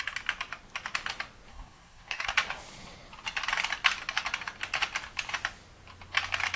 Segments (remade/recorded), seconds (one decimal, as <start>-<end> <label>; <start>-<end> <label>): 0.0-1.5 recorded; 1.5-2.3 remade; 2.3-6.6 recorded